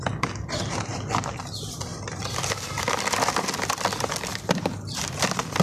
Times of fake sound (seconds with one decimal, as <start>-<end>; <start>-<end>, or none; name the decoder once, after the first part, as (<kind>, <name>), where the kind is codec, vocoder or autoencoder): 1.9-4.1 (vocoder, BigVGAN v2)